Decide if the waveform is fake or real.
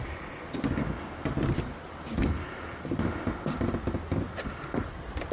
real